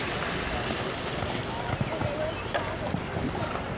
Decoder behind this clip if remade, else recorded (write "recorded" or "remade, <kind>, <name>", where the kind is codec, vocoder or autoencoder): recorded